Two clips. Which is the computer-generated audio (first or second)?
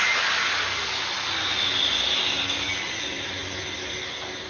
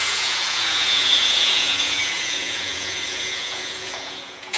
second